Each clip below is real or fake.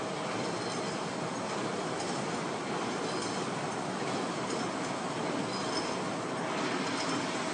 real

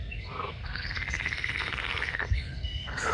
fake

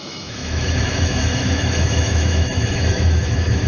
fake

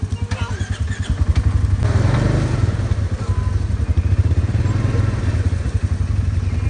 real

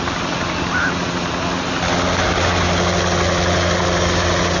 real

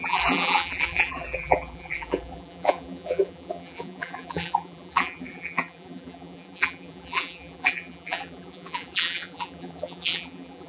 fake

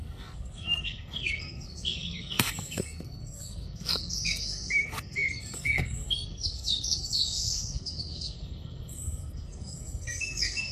fake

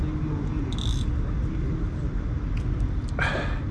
real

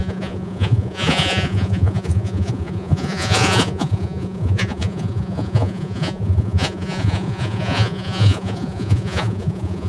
fake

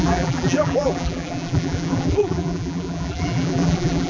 fake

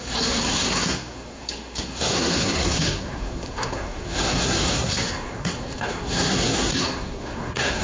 fake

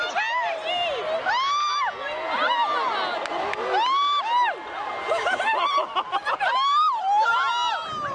real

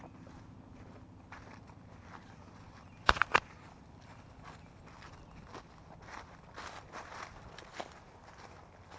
real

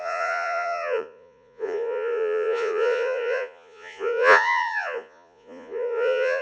fake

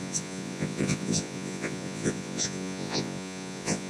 fake